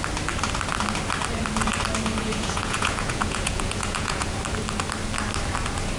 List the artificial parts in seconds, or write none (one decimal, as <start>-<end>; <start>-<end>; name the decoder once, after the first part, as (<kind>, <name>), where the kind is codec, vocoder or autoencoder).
2.2-4.4 (vocoder, Vocos)